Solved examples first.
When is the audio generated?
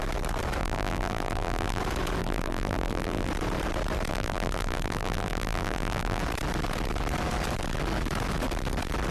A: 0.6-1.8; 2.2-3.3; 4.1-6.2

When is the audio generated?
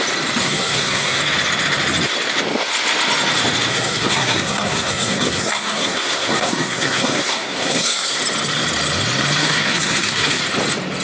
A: 0.4-1.2; 3.7-8.2; 9.4-10.4